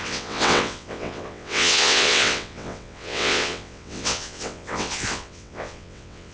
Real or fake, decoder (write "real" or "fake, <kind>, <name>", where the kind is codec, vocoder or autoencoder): fake, vocoder, WaveNeXt